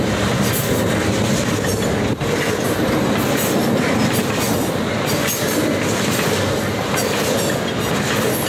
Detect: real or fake real